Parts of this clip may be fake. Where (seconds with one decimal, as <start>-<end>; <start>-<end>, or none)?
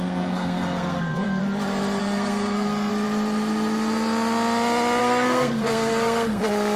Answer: 0.0-1.4; 2.0-2.9; 5.0-6.8